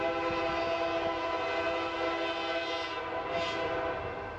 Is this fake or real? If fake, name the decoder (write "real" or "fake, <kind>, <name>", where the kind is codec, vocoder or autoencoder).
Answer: real